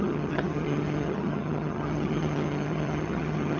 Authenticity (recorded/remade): remade